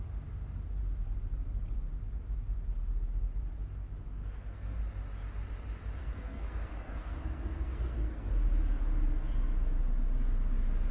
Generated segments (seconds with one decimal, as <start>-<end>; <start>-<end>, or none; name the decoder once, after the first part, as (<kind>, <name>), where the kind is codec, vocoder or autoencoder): 4.2-4.8 (codec, SNAC); 6.0-8.3

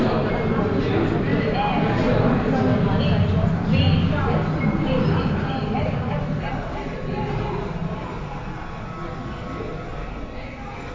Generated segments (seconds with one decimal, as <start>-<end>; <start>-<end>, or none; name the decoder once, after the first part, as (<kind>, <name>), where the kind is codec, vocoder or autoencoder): none

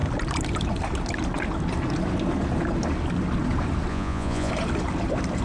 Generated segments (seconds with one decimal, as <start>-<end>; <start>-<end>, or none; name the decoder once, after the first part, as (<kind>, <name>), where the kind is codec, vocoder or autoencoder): 3.9-4.5 (vocoder, Vocos)